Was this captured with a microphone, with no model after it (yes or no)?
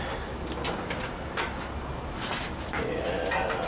yes